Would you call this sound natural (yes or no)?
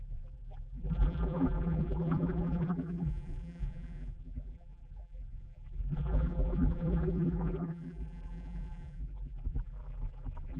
no